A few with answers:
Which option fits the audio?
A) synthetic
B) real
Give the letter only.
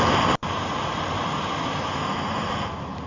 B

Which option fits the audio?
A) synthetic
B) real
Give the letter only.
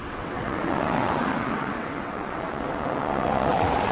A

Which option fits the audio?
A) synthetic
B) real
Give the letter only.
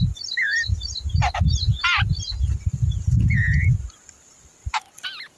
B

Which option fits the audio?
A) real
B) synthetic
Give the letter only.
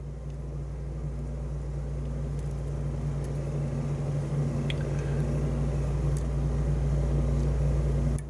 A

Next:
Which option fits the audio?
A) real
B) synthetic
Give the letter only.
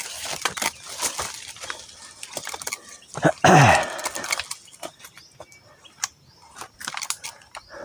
A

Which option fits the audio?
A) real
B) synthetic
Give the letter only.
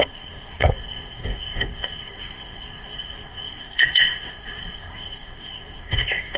B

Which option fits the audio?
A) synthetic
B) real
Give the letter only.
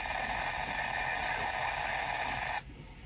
B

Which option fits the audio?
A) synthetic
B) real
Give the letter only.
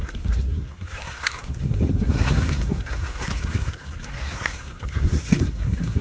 A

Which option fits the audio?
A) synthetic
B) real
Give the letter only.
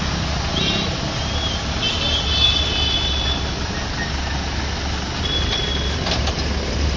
B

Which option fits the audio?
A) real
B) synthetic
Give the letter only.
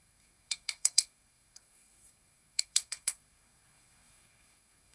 B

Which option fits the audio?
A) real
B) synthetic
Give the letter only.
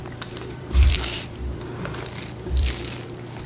B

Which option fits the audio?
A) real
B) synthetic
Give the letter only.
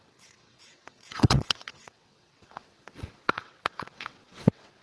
B